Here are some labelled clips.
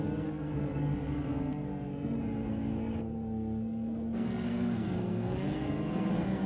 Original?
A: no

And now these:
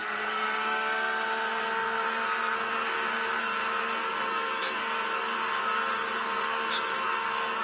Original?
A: no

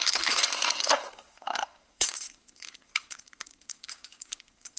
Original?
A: no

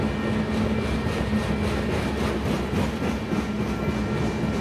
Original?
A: yes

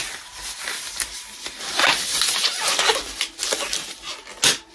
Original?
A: yes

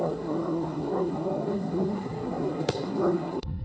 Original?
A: no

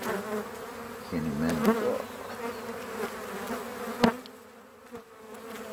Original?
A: yes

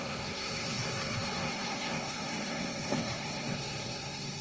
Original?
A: no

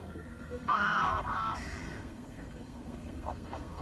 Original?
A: no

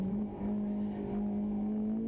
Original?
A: yes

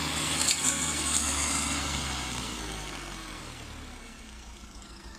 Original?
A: no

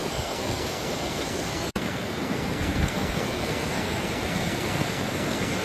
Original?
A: no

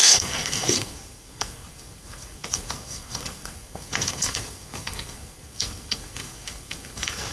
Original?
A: no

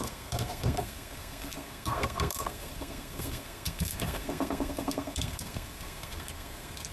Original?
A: no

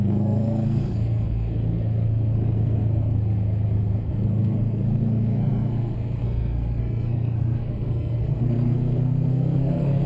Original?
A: no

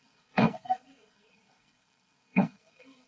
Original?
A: no